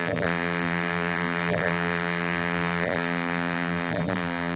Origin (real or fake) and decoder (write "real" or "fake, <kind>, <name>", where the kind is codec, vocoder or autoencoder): fake, vocoder, BigVGAN v2